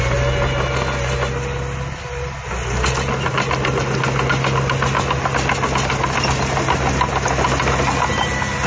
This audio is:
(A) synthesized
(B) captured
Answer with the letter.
B